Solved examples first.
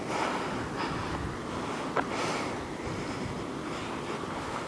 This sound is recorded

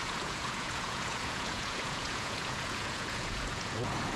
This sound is remade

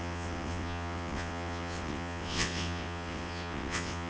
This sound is remade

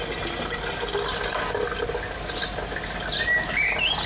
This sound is recorded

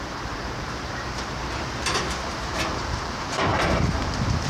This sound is remade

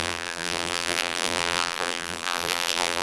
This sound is remade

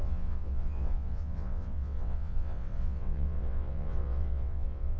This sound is remade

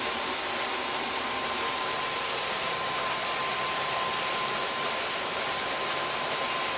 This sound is remade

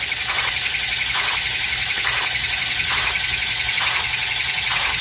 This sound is recorded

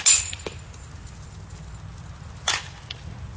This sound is recorded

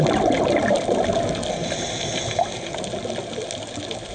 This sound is recorded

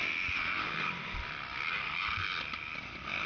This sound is remade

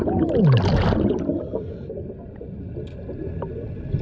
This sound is recorded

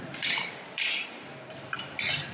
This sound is remade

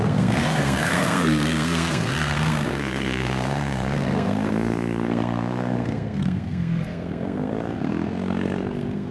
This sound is remade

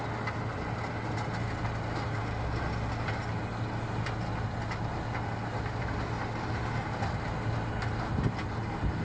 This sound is recorded